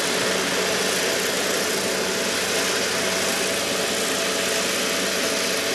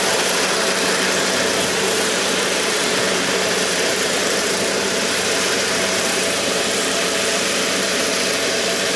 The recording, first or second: first